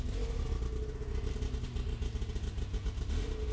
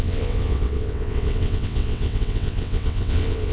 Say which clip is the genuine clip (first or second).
first